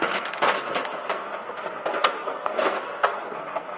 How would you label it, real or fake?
fake